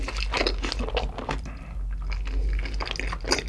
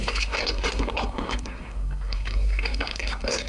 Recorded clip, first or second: first